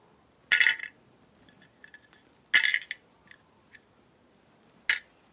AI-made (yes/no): no